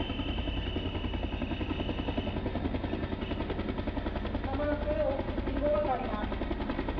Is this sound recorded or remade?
recorded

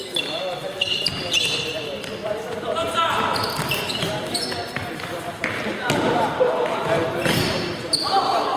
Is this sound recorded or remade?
recorded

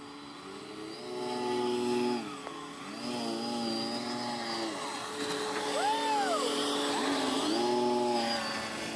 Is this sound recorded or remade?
recorded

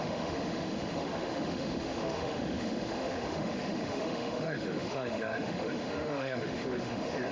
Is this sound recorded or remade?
remade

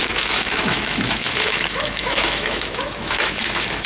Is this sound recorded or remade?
remade